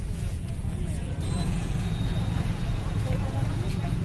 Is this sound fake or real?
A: fake